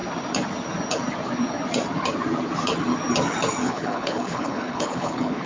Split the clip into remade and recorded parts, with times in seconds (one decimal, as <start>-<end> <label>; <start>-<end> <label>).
0.0-3.6 recorded; 3.6-5.5 remade